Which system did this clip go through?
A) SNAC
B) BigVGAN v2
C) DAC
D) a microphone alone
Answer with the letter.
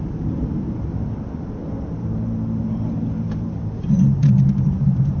B